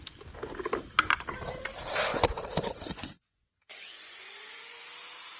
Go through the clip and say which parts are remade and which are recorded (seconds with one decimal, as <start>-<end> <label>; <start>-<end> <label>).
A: 0.0-2.1 recorded; 2.1-4.9 remade; 4.9-5.4 recorded